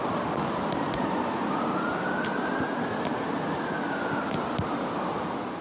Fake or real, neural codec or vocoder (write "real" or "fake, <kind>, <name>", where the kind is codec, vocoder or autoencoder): real